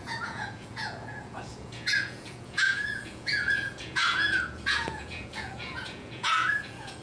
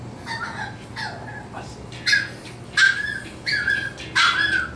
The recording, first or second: second